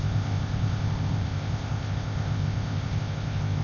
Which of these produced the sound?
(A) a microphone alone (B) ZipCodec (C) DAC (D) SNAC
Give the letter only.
B